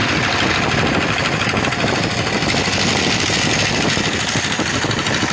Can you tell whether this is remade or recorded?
recorded